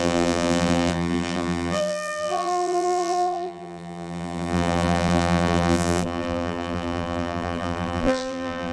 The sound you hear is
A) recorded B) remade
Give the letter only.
B